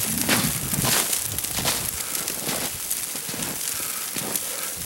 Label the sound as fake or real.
real